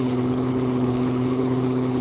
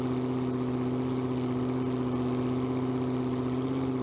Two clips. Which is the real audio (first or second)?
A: second